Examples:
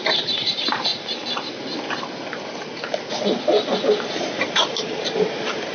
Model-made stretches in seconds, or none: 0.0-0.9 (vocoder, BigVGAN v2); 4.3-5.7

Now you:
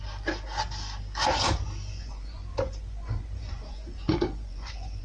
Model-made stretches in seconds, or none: 1.9-5.0 (vocoder, Vocos)